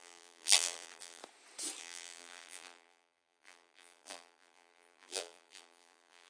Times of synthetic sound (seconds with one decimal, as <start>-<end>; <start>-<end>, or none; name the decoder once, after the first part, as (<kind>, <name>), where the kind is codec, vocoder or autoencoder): 0.0-1.2 (vocoder, BigVGAN v2); 1.8-6.3